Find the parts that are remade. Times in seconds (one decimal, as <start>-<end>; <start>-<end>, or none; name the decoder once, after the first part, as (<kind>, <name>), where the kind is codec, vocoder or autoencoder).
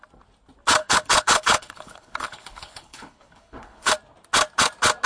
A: 0.8-3.9 (codec, HILCodec)